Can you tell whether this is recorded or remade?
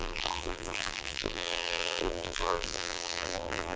remade